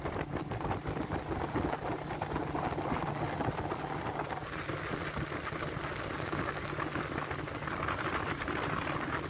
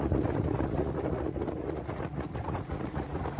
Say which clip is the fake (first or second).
second